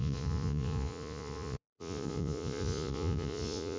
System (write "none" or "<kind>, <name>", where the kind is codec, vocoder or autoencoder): vocoder, Vocos